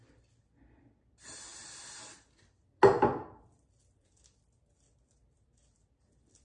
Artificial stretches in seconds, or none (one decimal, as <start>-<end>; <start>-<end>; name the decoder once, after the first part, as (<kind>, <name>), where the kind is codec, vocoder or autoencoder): none